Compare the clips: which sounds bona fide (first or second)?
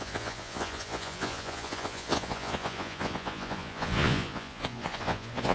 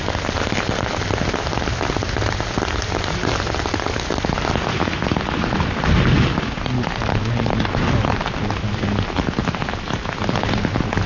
second